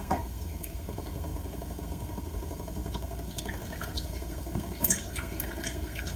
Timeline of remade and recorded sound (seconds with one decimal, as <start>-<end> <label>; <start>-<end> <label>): 0.0-6.2 remade